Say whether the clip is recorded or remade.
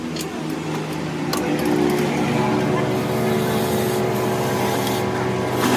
recorded